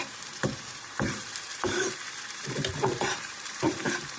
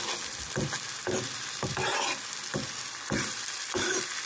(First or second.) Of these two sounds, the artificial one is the first